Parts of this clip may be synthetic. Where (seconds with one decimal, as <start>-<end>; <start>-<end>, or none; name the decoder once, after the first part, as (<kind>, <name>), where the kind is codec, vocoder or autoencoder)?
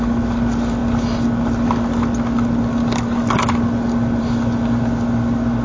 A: none